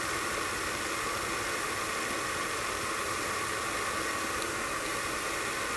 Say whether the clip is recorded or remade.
recorded